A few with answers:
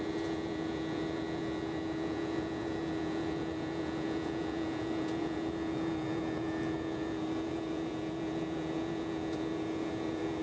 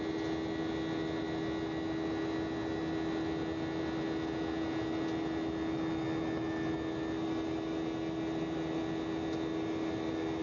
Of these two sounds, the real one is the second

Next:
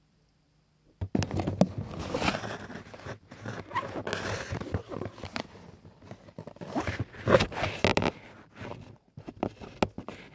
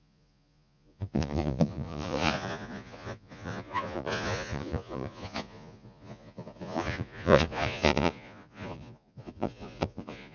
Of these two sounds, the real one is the first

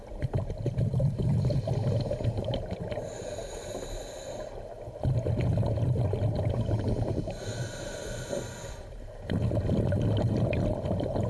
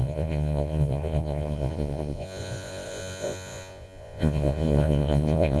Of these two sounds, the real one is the first